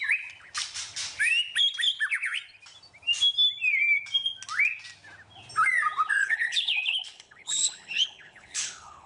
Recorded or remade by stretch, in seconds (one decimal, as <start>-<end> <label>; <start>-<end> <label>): 0.0-6.2 recorded; 6.2-9.1 remade